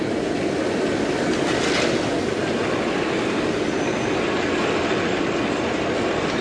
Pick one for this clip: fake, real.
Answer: real